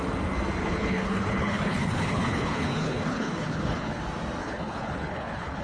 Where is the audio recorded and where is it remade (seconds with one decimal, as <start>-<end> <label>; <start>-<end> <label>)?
0.0-0.6 recorded; 0.6-4.0 remade; 4.0-4.4 recorded; 4.4-5.6 remade